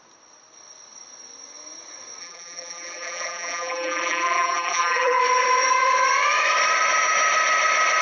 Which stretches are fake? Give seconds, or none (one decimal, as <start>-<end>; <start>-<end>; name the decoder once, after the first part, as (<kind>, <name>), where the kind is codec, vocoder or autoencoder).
2.2-5.2 (vocoder, BigVGAN v2)